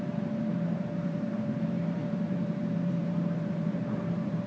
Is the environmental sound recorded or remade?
remade